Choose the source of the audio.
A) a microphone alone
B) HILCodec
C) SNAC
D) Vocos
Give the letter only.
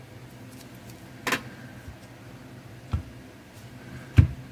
A